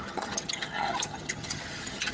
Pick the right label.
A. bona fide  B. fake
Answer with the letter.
B